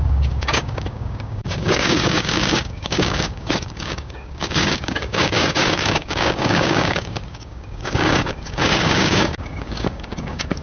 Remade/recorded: remade